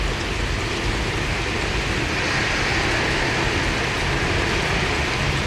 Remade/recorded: recorded